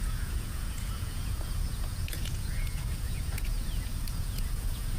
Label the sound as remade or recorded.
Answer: remade